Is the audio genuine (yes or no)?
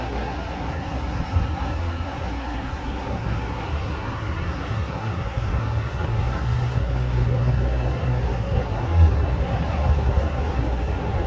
no